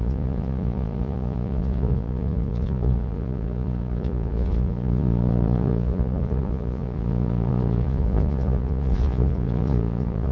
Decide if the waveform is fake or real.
fake